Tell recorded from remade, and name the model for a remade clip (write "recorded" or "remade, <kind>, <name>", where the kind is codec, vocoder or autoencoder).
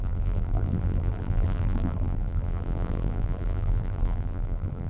remade, vocoder, BigVGAN v2